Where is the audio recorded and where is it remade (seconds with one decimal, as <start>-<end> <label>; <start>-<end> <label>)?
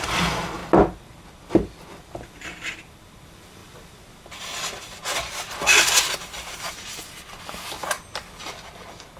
0.0-0.6 remade; 0.6-2.0 recorded; 2.0-3.6 remade; 3.6-7.4 recorded; 7.4-9.2 remade